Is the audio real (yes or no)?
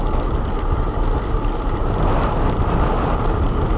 yes